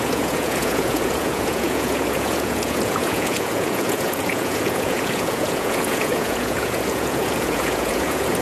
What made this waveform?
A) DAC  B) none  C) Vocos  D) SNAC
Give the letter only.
C